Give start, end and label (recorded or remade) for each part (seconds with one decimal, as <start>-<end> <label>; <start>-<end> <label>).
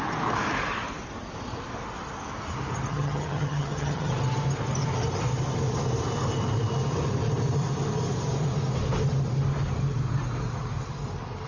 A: 0.0-2.9 recorded; 2.9-4.1 remade; 4.1-11.5 recorded